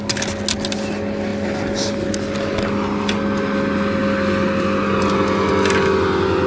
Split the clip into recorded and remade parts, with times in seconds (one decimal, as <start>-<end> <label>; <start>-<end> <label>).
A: 0.0-6.5 recorded